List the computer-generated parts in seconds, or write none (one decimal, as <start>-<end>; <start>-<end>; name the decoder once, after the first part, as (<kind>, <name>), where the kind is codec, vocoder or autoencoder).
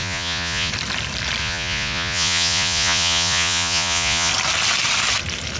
0.0-0.7 (vocoder, Vocos); 1.4-4.3